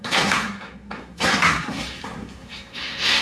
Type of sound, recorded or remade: remade